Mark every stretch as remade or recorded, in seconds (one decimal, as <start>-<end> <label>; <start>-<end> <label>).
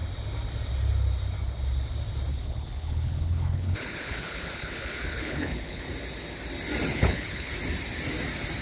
0.0-2.3 recorded; 2.3-5.8 remade; 5.8-6.9 recorded; 6.9-7.5 remade; 7.5-8.6 recorded